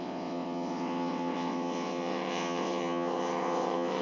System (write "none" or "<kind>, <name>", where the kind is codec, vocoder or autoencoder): vocoder, WaveNeXt